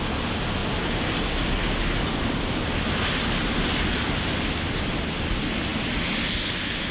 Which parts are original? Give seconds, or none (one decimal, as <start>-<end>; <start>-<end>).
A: 0.0-6.9